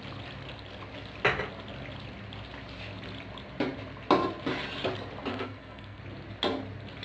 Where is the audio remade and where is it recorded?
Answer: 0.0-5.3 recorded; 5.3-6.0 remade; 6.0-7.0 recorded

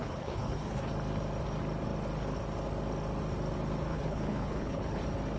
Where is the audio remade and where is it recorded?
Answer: 0.0-0.9 remade; 0.9-3.9 recorded; 3.9-5.0 remade; 5.0-5.4 recorded

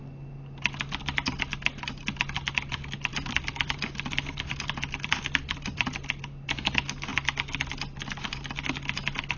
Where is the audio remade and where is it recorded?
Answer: 0.0-3.1 recorded; 3.1-6.0 remade; 6.0-9.4 recorded

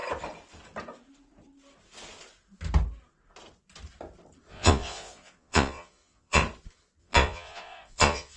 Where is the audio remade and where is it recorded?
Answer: 0.0-4.5 recorded; 4.5-6.4 remade; 6.4-7.0 recorded; 7.0-8.4 remade

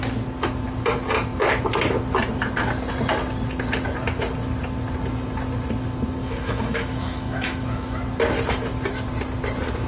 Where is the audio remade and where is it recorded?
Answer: 0.0-6.2 recorded; 6.2-8.0 remade; 8.0-9.9 recorded